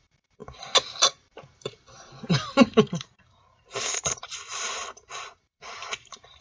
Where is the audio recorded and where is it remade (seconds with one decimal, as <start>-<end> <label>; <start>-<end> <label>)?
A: 0.0-0.4 remade; 0.4-1.0 recorded; 1.0-6.4 remade